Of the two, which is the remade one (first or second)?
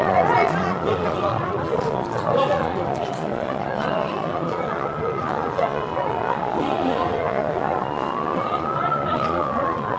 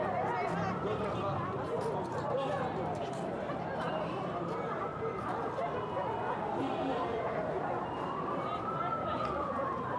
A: first